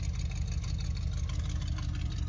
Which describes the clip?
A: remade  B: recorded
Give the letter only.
B